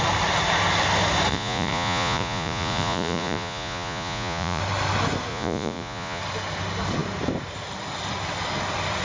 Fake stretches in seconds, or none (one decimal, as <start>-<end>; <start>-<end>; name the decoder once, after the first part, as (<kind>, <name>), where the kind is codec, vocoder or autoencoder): 1.3-4.6 (vocoder, Vocos); 5.3-6.2